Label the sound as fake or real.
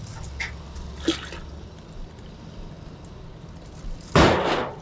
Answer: real